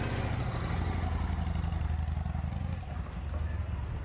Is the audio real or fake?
real